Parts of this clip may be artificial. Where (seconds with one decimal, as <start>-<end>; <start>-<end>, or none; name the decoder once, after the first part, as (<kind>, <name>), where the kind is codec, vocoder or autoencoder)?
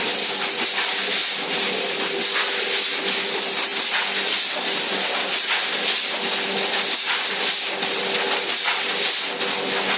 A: none